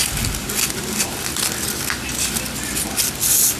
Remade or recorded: recorded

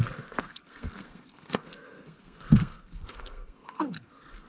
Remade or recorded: remade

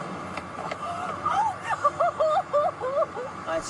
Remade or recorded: recorded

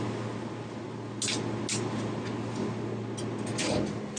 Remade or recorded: recorded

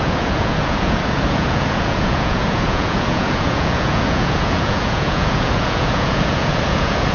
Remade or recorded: remade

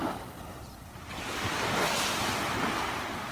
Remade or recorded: recorded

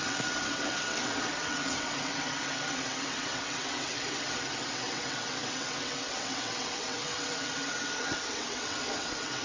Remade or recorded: remade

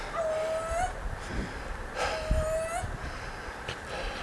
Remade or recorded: recorded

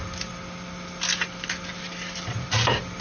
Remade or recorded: recorded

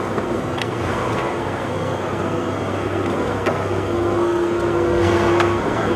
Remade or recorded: remade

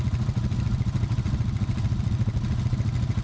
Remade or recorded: recorded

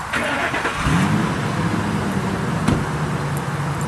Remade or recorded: recorded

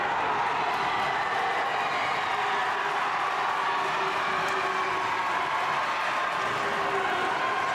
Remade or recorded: recorded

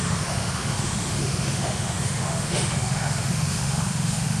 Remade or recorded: remade